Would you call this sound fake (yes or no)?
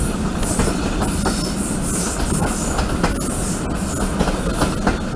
no